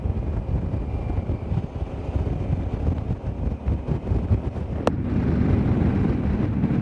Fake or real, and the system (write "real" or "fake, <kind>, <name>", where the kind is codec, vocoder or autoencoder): real